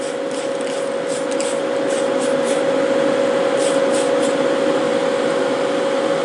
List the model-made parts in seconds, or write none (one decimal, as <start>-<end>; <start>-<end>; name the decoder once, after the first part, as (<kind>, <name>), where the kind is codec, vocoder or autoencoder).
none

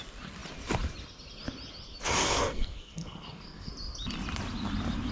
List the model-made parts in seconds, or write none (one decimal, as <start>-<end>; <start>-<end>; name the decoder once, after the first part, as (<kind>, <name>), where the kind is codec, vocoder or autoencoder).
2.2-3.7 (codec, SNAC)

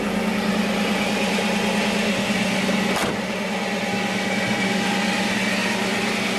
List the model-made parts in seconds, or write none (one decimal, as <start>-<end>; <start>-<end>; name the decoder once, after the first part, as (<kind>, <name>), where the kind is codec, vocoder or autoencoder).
none

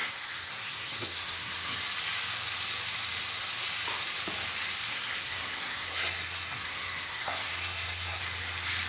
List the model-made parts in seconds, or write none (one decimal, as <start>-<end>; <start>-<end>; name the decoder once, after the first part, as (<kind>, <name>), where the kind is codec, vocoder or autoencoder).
0.0-1.8 (codec, SNAC); 4.9-8.2

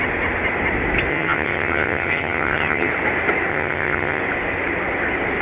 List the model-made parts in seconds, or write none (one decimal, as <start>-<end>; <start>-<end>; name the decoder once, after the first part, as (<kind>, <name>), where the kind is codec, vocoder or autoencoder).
1.1-2.9 (vocoder, HiFi-GAN); 3.5-4.2

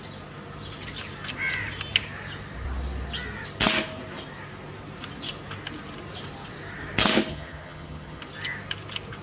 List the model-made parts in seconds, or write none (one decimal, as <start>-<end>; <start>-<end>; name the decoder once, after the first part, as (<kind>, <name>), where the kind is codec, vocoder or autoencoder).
7.3-8.2 (vocoder, HiFi-GAN)

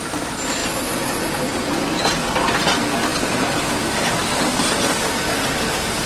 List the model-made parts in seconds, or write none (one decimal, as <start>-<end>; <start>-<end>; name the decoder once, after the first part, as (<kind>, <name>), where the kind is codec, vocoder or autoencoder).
none